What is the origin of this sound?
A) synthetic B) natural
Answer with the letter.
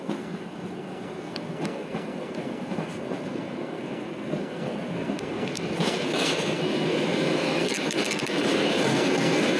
A